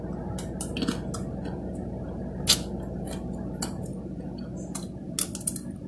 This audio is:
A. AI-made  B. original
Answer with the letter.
B